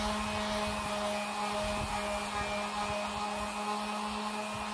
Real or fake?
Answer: real